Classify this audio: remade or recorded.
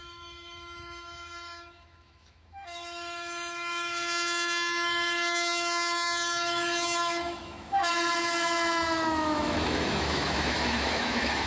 remade